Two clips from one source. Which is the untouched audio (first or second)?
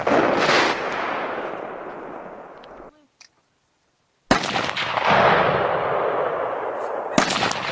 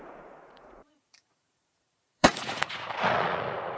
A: first